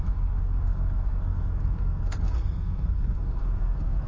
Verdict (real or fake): fake